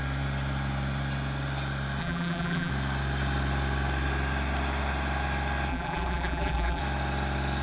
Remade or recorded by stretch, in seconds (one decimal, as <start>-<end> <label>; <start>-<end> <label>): 0.0-2.0 recorded; 2.0-2.7 remade; 2.7-5.7 recorded; 5.7-6.8 remade; 6.8-7.6 recorded